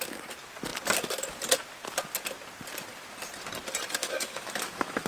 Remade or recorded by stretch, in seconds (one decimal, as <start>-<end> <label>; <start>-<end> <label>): 0.0-4.0 recorded; 4.0-5.1 remade